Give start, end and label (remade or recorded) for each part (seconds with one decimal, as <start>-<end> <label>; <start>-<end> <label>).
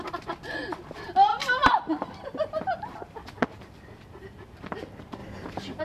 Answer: 0.0-1.3 recorded; 1.3-4.5 remade; 4.5-5.8 recorded